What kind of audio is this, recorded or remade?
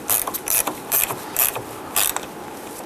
remade